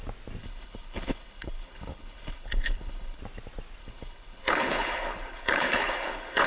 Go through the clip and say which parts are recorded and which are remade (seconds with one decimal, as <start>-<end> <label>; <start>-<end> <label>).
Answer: 0.0-0.4 recorded; 0.4-3.2 remade; 3.2-3.8 recorded; 3.8-6.5 remade